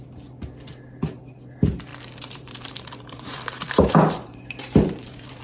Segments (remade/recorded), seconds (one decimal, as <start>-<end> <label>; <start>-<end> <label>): 0.0-1.9 recorded; 1.9-5.4 remade